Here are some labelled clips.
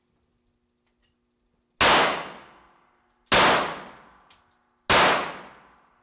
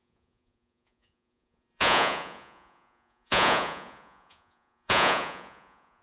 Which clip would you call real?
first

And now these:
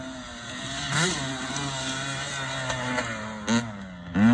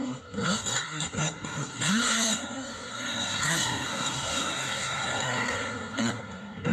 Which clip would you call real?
first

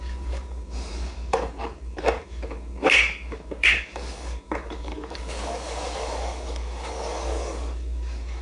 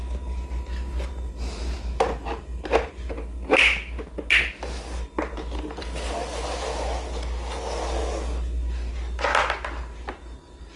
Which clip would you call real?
second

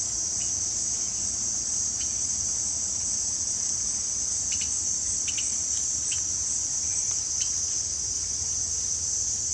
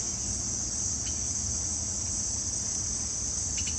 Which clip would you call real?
second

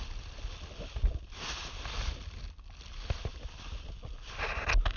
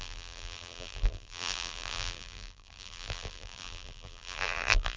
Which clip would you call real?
first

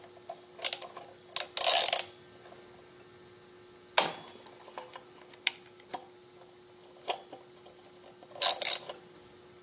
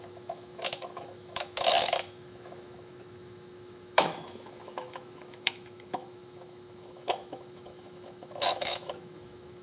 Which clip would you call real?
first